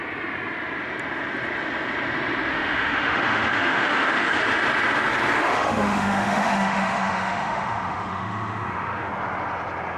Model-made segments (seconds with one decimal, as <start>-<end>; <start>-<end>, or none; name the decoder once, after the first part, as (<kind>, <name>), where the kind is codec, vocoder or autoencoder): 2.5-4.4 (autoencoder, DAC-VAE); 5.4-9.1